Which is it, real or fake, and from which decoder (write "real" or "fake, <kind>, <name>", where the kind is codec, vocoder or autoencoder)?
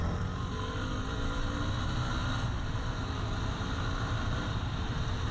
real